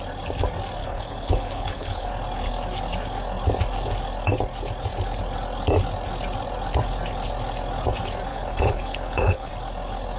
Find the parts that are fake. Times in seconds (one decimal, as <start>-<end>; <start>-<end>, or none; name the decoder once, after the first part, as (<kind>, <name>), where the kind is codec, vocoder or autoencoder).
0.8-2.1 (codec, HILCodec); 8.3-9.5